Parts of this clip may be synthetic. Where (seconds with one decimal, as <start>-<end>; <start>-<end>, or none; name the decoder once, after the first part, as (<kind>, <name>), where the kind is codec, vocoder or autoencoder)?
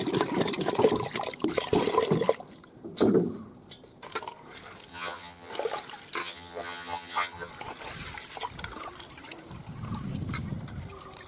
4.9-5.5 (vocoder, HiFi-GAN); 6.2-7.5